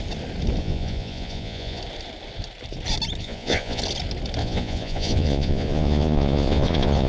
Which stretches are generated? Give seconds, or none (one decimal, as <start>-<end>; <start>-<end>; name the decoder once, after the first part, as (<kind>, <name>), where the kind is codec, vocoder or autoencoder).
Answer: 0.6-1.8 (vocoder, Vocos); 3.2-3.8; 4.4-7.1

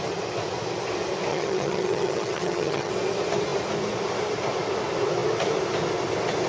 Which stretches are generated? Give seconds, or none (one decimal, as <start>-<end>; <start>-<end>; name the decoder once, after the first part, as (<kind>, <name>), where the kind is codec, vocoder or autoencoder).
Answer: 1.3-2.9 (vocoder, HiFi-GAN)

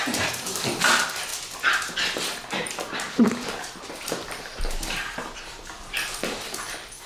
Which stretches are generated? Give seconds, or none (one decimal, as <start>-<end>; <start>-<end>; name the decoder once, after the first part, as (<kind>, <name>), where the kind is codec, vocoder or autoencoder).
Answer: 0.0-7.1 (vocoder, BigVGAN v2)

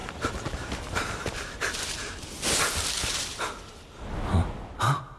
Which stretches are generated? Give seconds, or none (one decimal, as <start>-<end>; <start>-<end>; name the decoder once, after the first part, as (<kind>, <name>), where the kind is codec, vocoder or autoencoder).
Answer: 0.0-2.2 (vocoder, BigVGAN v2); 3.0-3.5

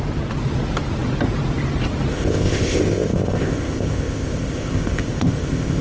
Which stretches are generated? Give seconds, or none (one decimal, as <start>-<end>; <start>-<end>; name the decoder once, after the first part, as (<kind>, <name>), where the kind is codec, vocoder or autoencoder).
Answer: 2.1-5.8 (codec, ZipCodec)

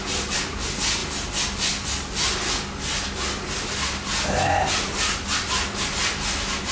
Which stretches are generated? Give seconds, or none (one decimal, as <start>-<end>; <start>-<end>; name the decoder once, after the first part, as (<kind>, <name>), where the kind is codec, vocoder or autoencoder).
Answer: none

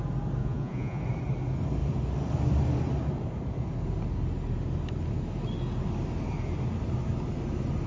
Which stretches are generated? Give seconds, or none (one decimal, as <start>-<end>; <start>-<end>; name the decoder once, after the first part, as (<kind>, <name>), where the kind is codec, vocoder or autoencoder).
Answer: 0.4-1.0 (vocoder, Vocos)

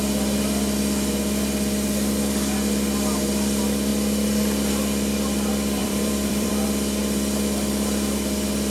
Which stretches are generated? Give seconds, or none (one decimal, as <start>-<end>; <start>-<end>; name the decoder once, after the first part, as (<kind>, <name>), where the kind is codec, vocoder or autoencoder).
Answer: 5.8-6.5 (vocoder, BigVGAN v2)